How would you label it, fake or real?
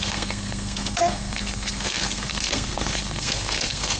fake